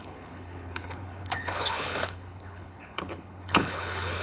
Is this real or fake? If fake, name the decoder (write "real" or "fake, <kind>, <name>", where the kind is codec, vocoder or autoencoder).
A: fake, codec, HILCodec